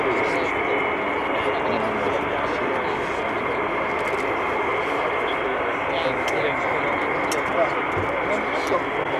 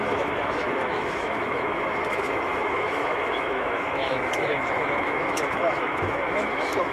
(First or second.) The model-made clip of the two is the second